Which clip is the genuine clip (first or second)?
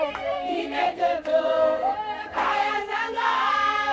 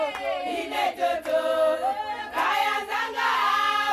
second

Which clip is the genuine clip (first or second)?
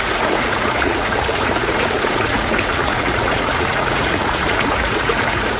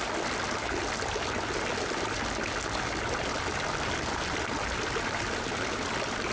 second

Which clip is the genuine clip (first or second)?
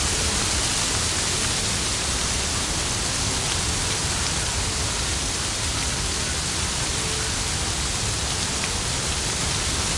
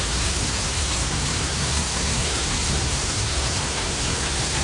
first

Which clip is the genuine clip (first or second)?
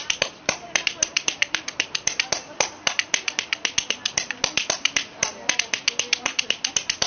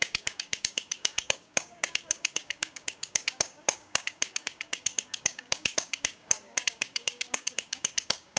first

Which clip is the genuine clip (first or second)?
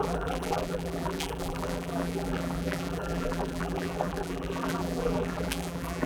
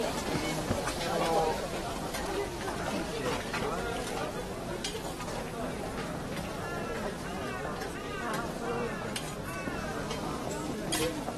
second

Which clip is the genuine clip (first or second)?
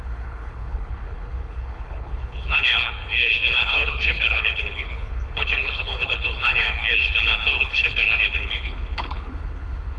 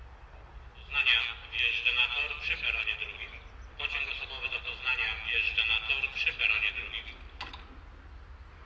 second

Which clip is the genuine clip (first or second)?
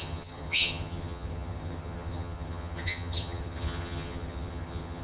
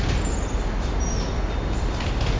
second